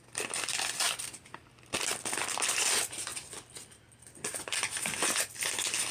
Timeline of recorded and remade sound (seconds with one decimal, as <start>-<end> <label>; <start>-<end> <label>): 0.0-5.9 recorded